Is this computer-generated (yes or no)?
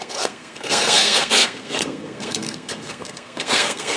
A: yes